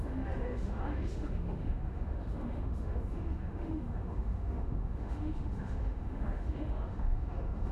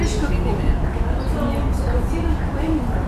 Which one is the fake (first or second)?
first